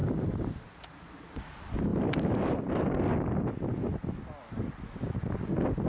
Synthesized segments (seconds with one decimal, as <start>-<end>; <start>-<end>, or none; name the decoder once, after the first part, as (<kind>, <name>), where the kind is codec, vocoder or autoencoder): 0.0-1.4 (vocoder, BigVGAN v2); 1.9-2.7